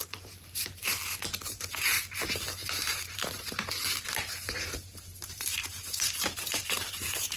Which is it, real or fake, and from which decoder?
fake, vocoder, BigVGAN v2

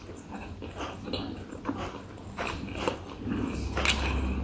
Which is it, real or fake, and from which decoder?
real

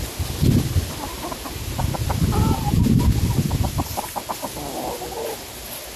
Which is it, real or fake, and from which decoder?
real